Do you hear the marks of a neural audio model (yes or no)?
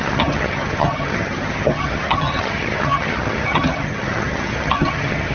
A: yes